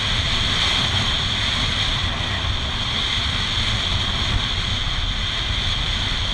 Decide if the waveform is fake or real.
real